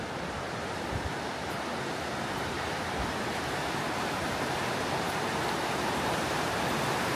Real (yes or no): no